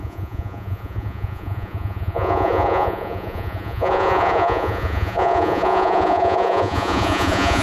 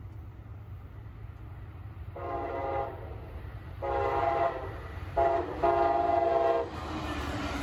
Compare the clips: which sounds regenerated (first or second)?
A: first